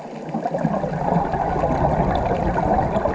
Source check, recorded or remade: recorded